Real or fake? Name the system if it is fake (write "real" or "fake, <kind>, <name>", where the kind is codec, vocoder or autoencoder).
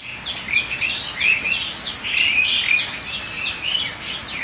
real